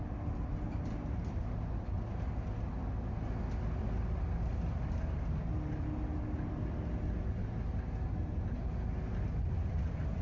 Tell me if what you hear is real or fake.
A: real